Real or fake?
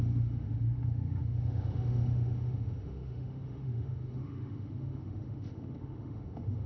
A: fake